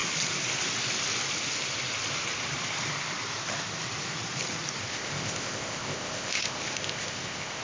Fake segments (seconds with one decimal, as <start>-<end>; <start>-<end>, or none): 4.9-7.6